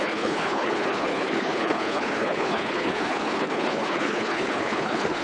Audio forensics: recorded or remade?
remade